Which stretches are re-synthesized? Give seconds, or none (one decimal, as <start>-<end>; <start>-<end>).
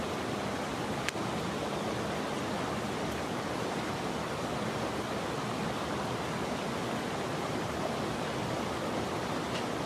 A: 7.3-7.9